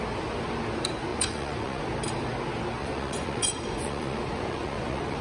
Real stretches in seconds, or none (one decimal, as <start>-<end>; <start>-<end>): 0.0-1.1; 1.8-2.8